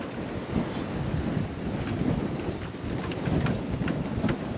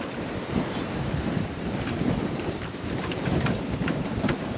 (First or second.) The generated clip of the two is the second